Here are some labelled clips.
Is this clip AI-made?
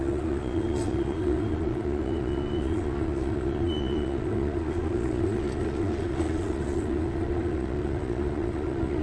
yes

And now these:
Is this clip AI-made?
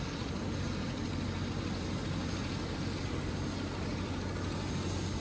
no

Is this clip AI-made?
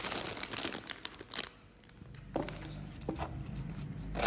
no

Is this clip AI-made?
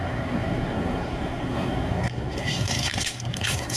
yes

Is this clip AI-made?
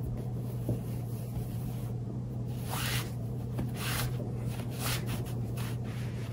yes